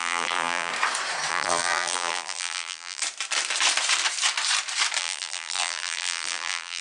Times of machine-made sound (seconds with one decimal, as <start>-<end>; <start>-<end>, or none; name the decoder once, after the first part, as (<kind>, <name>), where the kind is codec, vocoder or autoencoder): 0.0-0.7 (vocoder, BigVGAN v2); 1.3-3.0; 5.0-6.8